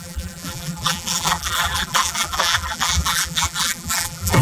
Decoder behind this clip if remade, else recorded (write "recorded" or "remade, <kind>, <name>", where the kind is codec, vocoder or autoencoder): remade, vocoder, BigVGAN v2